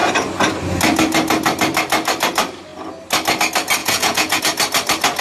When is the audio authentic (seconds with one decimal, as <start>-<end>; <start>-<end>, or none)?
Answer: 0.0-3.8; 4.4-5.2